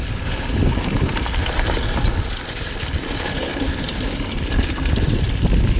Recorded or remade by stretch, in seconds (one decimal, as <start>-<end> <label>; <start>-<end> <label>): 0.0-5.8 recorded